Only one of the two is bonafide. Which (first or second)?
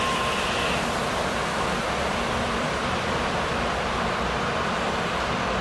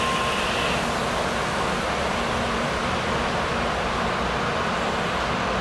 second